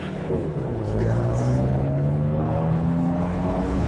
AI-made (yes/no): yes